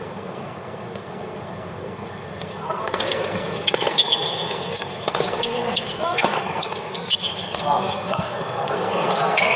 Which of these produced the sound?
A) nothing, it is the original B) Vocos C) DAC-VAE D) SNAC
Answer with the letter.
D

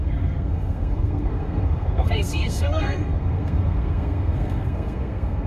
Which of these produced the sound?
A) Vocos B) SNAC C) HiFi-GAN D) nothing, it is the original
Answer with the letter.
B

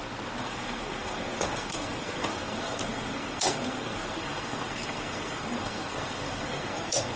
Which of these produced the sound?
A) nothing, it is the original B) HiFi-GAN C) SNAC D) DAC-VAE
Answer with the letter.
C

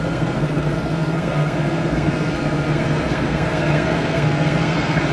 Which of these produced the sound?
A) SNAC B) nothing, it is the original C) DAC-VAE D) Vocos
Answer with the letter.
A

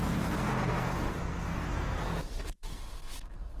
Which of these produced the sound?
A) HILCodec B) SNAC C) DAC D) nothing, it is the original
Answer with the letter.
B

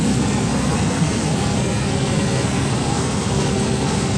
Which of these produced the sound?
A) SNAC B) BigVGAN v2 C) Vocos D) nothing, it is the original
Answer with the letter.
A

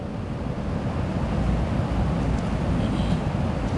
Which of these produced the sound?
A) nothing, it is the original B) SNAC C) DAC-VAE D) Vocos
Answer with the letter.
A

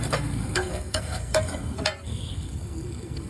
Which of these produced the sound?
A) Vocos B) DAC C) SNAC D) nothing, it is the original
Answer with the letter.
C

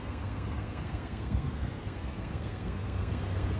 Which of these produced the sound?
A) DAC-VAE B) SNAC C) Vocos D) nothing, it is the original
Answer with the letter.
B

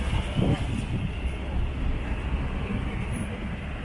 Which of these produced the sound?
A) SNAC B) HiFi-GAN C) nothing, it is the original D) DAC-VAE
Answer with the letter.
C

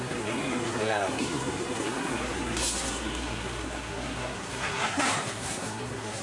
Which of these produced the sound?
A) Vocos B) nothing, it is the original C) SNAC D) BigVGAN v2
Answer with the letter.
C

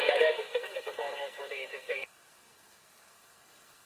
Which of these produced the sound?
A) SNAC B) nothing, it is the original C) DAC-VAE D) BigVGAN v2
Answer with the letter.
A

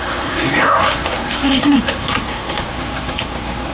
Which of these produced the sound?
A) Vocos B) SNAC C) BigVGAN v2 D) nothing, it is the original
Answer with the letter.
B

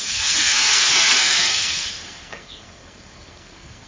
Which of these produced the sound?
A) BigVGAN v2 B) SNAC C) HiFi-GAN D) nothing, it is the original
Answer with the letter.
B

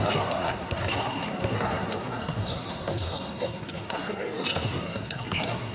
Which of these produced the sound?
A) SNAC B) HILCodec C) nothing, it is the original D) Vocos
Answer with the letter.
A